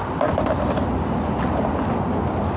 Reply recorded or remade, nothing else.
recorded